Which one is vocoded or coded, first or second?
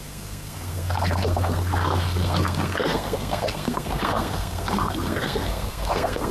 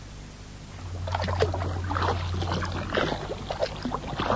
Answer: first